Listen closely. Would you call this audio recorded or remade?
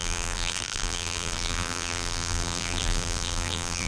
remade